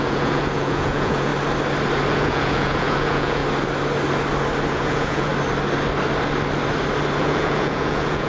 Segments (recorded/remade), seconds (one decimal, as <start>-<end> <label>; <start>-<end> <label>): 0.0-1.3 remade; 1.3-2.1 recorded; 2.1-3.4 remade; 3.4-4.7 recorded; 4.7-5.3 remade; 5.3-7.2 recorded; 7.2-8.3 remade